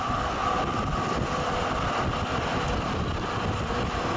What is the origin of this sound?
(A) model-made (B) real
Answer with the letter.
B